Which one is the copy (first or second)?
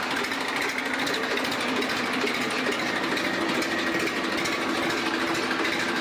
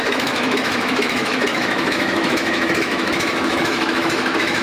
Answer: second